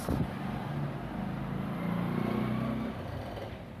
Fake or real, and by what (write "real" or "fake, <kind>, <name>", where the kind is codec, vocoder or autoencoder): real